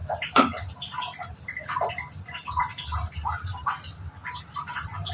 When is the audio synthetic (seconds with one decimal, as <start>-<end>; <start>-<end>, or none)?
0.0-1.9; 2.6-3.8; 4.2-5.1